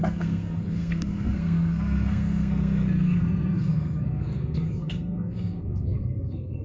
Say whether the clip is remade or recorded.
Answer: remade